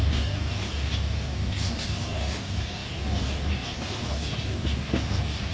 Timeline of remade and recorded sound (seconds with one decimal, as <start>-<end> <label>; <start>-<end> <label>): 0.0-5.5 remade